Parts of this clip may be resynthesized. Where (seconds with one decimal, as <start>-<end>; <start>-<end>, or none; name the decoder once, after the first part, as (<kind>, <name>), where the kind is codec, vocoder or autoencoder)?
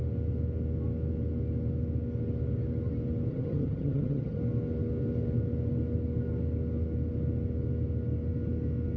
3.3-4.4 (vocoder, HiFi-GAN)